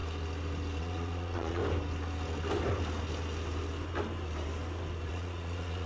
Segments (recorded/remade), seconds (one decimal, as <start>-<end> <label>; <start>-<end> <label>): 0.0-0.8 recorded; 0.8-1.6 remade; 1.6-5.1 recorded; 5.1-5.9 remade